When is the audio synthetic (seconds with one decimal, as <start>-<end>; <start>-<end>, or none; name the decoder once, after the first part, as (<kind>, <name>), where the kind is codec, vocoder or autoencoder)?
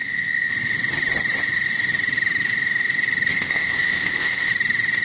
0.0-0.5 (codec, ZipCodec); 3.3-4.5